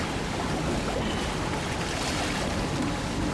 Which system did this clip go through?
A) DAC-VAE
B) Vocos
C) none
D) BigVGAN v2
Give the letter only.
C